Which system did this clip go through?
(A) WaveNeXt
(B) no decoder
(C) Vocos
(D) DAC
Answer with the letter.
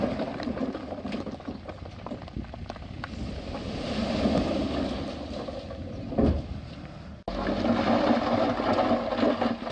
B